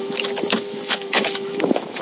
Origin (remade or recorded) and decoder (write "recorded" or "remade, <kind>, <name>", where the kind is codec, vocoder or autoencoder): remade, autoencoder, DAC-VAE